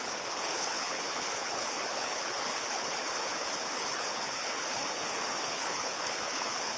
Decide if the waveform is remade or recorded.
remade